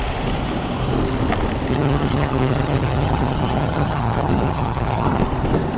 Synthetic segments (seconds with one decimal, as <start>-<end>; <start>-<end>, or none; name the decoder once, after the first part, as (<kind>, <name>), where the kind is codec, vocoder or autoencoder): 1.7-5.2 (vocoder, HiFi-GAN)